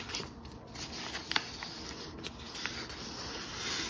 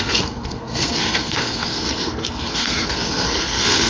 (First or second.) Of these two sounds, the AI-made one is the second